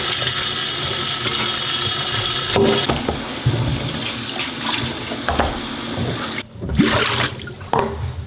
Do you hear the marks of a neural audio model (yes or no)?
no